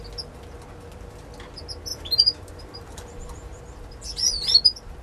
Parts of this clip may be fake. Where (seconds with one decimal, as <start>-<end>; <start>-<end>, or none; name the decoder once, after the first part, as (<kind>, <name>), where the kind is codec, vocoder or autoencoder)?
1.9-3.6 (vocoder, BigVGAN v2)

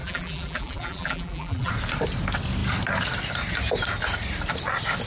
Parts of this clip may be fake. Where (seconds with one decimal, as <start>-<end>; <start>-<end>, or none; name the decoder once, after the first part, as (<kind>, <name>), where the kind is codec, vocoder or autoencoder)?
0.0-1.7 (vocoder, BigVGAN v2)

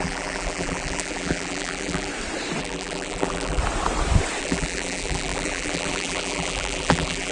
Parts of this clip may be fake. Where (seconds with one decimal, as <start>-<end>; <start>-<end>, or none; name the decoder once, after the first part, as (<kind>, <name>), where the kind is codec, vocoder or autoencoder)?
0.0-2.1 (vocoder, BigVGAN v2); 2.6-3.6; 4.4-7.3

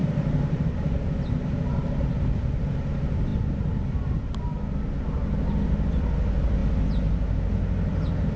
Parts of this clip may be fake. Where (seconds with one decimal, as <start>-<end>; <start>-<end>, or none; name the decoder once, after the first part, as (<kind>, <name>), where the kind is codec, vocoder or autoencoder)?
0.0-1.3 (vocoder, BigVGAN v2)